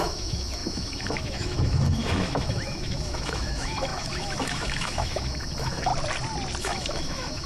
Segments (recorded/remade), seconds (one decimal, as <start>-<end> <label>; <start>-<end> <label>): 0.0-5.9 remade; 5.9-6.6 recorded; 6.6-7.5 remade